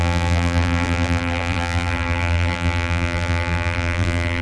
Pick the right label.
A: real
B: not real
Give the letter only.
B